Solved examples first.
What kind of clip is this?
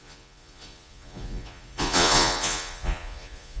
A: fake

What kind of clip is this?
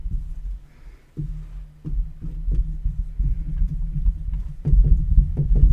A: real